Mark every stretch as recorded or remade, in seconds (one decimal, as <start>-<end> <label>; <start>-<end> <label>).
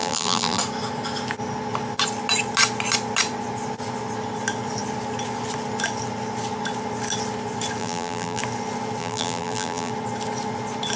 0.0-0.6 remade; 0.6-7.8 recorded; 7.8-8.4 remade; 8.4-9.0 recorded; 9.0-9.9 remade; 9.9-11.0 recorded